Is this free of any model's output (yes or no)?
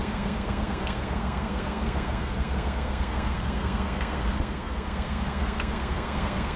no